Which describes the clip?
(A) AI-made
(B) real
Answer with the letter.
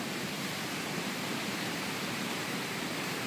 A